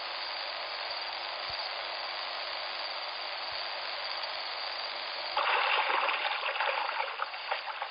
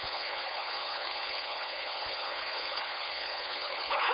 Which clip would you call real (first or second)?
first